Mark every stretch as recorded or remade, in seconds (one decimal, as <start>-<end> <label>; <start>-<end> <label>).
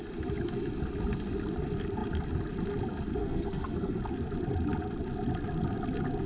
0.0-3.2 recorded; 3.2-4.0 remade; 4.0-6.3 recorded